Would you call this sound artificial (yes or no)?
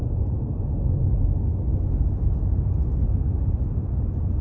no